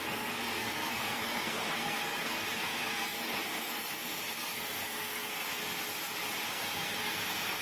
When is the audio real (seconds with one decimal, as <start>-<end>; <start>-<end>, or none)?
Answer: 5.6-6.5